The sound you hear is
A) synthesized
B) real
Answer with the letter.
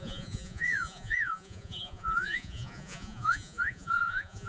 A